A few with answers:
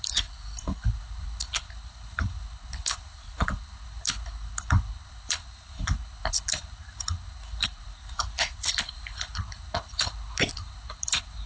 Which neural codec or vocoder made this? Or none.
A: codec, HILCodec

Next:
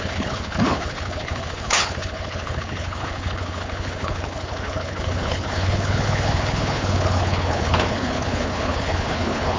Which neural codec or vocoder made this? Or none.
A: codec, HILCodec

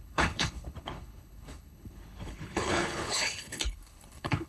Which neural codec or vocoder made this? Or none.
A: codec, HILCodec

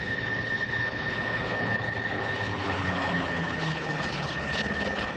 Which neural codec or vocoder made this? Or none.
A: codec, HILCodec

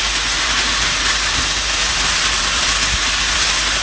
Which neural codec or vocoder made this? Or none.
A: none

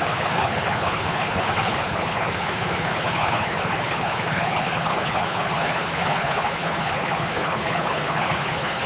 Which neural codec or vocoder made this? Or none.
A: codec, HILCodec